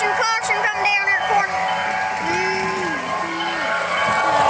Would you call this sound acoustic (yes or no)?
yes